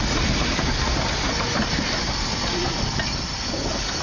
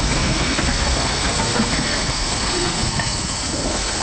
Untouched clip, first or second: first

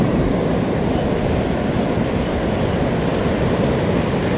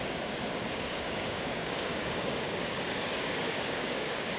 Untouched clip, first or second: first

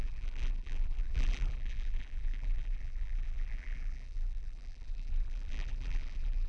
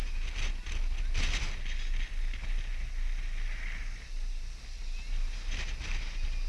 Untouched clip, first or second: second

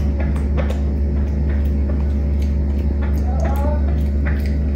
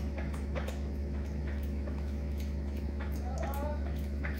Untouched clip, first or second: first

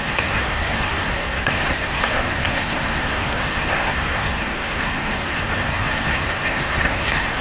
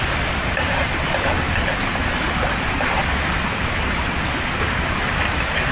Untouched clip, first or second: second